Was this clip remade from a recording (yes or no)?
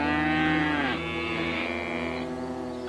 no